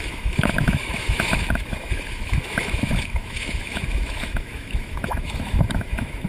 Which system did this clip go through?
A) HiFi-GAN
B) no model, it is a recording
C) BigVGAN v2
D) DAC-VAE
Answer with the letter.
D